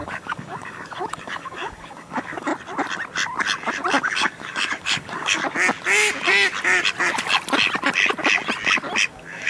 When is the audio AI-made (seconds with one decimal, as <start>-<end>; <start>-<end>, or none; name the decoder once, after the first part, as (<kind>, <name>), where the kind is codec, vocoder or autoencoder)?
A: 0.0-2.5 (codec, DAC); 4.0-5.4; 9.1-9.5